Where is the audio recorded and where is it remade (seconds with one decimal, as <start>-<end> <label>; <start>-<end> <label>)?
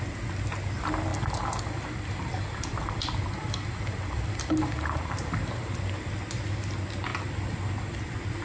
0.0-1.1 recorded; 1.1-5.9 remade; 5.9-7.1 recorded; 7.1-8.0 remade; 8.0-8.4 recorded